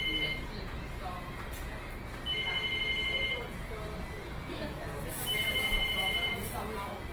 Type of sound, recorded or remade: recorded